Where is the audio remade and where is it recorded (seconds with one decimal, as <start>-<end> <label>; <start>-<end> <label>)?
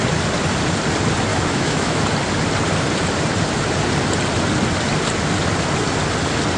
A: 0.0-1.3 recorded; 1.3-2.0 remade; 2.0-6.6 recorded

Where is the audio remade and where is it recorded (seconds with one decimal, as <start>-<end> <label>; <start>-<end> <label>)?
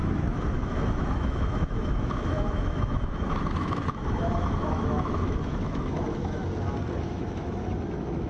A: 0.0-6.4 remade; 6.4-7.0 recorded; 7.0-8.3 remade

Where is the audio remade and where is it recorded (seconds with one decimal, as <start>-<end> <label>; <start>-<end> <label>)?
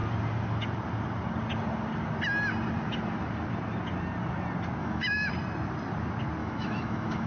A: 0.0-4.8 recorded; 4.8-5.3 remade; 5.3-6.4 recorded; 6.4-7.3 remade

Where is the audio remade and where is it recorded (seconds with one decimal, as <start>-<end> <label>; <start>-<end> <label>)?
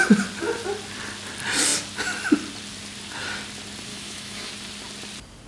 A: 0.0-3.9 recorded; 3.9-4.5 remade; 4.5-5.5 recorded